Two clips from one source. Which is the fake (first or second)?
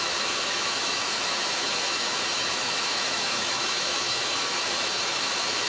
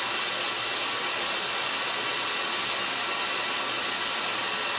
first